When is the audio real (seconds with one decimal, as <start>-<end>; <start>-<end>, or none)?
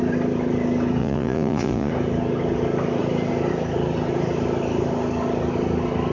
0.0-1.0; 1.9-6.1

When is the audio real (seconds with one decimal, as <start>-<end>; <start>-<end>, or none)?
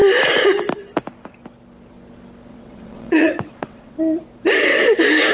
0.0-2.5; 4.0-5.3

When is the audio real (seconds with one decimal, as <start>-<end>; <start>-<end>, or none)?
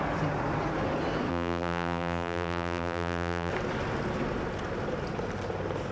0.0-1.3; 3.5-5.9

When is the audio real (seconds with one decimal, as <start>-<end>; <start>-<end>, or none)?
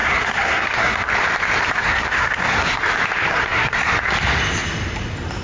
1.1-1.8; 2.8-3.3; 3.9-5.4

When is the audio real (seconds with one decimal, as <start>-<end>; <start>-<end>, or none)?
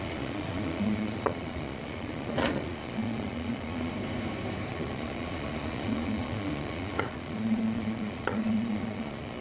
3.9-4.7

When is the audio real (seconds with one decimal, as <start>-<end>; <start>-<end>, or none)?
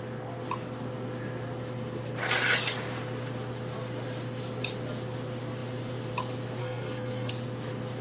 0.0-6.6; 7.3-8.0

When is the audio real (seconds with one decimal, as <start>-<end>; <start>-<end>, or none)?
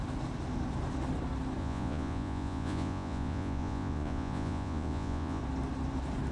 0.0-1.6; 5.4-6.3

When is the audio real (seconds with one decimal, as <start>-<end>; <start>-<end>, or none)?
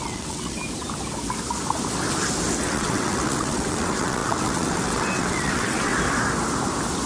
0.6-2.6; 5.9-7.1